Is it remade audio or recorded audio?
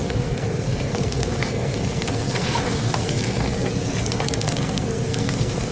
remade